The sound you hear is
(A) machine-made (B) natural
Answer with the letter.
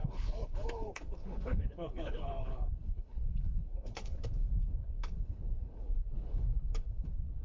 A